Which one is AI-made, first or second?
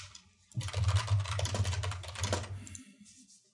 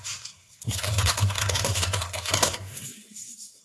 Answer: second